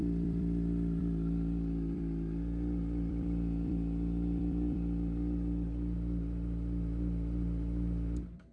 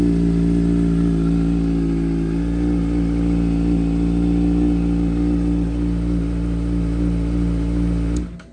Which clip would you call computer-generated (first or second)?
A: first